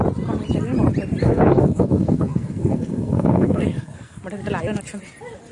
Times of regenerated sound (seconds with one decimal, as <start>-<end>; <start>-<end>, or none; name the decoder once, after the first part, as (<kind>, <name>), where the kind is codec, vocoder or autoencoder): 1.2-4.2 (codec, SNAC)